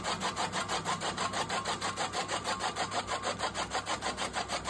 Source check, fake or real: real